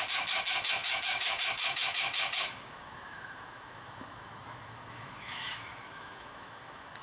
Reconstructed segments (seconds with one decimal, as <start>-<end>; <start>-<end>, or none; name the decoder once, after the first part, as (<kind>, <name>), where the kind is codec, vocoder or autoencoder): 0.0-7.0 (autoencoder, DAC-VAE)